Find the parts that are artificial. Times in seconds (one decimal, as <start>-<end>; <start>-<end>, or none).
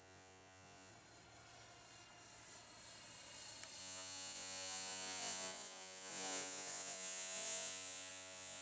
0.0-0.9; 3.8-8.6